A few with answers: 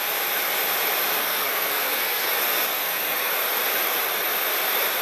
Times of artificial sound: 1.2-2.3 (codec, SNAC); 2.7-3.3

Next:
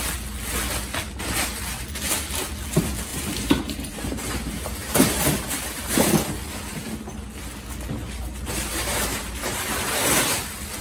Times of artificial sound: 3.1-6.1 (vocoder, BigVGAN v2); 8.3-9.7